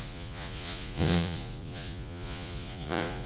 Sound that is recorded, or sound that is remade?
remade